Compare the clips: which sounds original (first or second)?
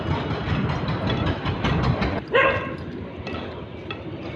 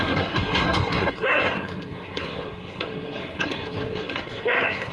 first